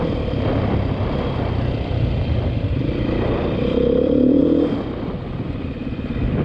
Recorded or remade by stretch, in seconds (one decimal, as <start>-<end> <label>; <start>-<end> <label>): 0.0-4.4 remade; 4.4-5.2 recorded; 5.2-6.4 remade